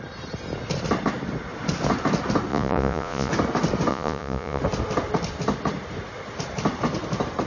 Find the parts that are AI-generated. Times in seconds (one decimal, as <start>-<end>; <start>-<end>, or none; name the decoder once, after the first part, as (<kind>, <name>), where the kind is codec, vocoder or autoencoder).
2.5-3.3 (vocoder, Vocos); 3.9-4.6